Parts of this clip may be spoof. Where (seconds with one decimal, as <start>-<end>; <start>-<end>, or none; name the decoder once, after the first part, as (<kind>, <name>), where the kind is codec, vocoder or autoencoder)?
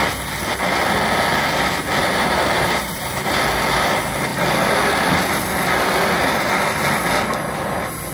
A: 2.0-3.4 (vocoder, BigVGAN v2)